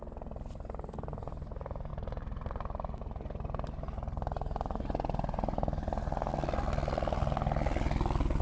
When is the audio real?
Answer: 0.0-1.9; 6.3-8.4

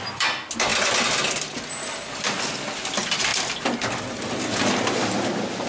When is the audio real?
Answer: 0.0-5.7